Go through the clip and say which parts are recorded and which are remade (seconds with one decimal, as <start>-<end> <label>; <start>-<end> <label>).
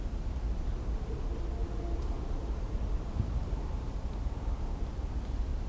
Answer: 0.0-1.6 recorded; 1.6-4.1 remade; 4.1-5.7 recorded